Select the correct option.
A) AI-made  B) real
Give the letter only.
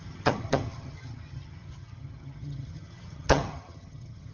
A